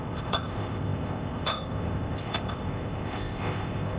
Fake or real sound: fake